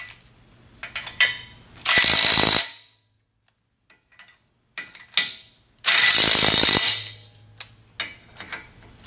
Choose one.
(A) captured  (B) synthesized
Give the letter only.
A